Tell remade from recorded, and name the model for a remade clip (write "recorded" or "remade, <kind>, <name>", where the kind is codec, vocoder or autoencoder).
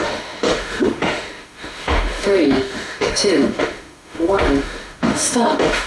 remade, autoencoder, DAC-VAE